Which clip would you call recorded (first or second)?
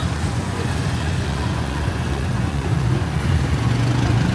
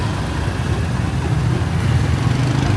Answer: second